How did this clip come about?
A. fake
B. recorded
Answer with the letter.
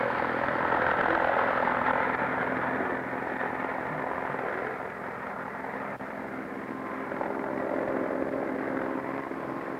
B